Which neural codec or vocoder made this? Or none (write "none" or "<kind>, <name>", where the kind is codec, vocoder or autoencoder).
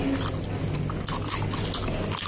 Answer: none